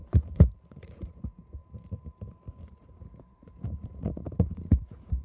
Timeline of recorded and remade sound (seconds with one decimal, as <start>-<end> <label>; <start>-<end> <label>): 0.0-1.6 remade; 1.6-2.6 recorded; 2.6-5.2 remade